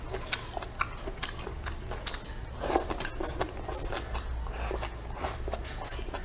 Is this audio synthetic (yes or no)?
no